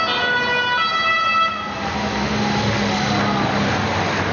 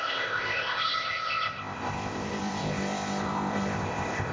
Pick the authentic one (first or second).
first